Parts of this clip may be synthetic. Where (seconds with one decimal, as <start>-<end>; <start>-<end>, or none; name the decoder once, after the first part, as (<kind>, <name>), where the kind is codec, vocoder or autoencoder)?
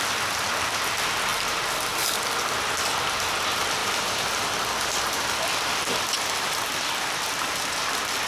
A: 3.8-7.9 (vocoder, BigVGAN v2)